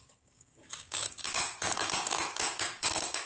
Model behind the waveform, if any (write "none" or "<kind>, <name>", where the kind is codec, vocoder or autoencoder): codec, DAC